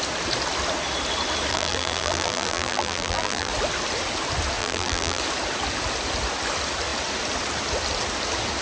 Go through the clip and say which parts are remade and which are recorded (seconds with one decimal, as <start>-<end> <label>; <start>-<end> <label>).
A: 0.0-1.5 recorded; 1.5-3.5 remade; 3.5-4.6 recorded; 4.6-5.2 remade; 5.2-8.6 recorded